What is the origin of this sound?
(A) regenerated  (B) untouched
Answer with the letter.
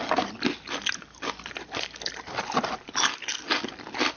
B